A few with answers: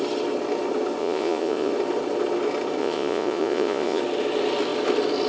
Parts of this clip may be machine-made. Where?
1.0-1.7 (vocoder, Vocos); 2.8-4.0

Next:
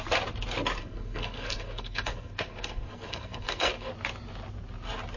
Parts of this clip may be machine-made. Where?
0.8-3.9 (codec, SNAC)

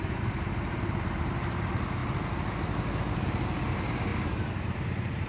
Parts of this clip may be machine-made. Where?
none

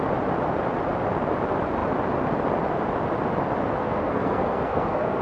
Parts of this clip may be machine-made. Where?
3.8-5.2 (codec, SNAC)

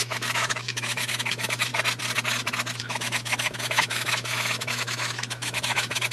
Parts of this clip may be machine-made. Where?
0.0-1.7 (autoencoder, DAC-VAE); 2.8-6.1

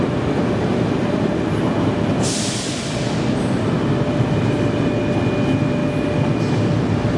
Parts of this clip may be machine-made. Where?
none

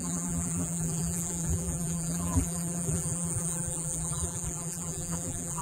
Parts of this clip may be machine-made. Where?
0.0-5.6 (vocoder, BigVGAN v2)

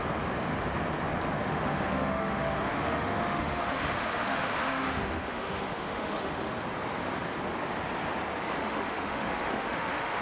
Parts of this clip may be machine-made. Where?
1.4-6.5 (autoencoder, DAC-VAE); 8.6-10.2